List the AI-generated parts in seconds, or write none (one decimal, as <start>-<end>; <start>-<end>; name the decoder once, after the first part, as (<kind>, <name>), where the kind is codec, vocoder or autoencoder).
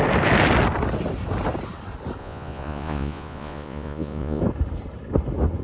2.2-4.4 (vocoder, Vocos)